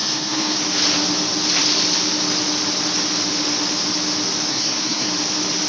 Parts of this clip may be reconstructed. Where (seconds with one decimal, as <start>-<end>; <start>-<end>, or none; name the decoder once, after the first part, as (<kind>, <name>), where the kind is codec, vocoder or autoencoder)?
0.0-0.6 (codec, SNAC); 4.5-5.1